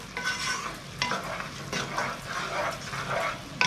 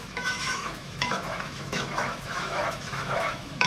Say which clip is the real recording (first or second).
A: first